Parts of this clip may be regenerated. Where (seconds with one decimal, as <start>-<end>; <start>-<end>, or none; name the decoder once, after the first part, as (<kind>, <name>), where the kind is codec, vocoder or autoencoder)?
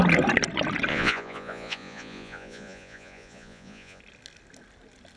0.9-4.0 (vocoder, Vocos)